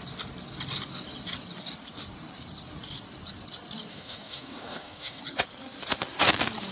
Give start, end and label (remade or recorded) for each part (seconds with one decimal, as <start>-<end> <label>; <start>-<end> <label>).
0.0-3.9 recorded; 3.9-5.2 remade; 5.2-6.7 recorded